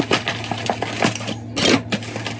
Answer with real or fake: real